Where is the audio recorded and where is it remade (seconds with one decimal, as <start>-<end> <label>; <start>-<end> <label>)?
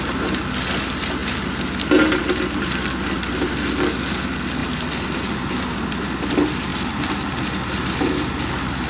0.0-8.9 recorded